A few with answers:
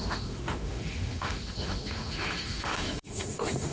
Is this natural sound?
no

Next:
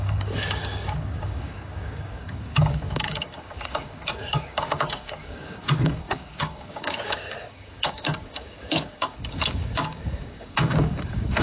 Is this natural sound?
no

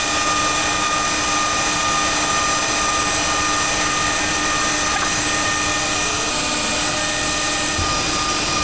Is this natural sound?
yes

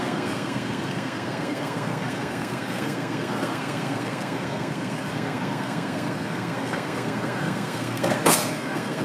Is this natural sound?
no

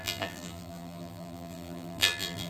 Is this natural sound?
no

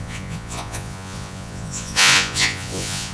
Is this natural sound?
no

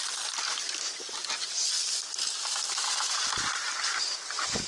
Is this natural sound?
yes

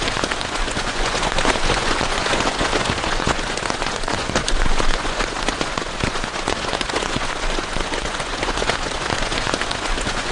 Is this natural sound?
no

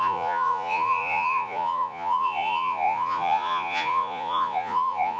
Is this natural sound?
no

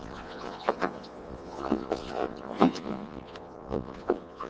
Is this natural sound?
no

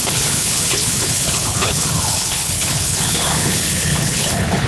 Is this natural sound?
no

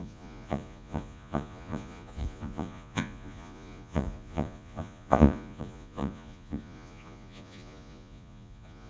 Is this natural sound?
no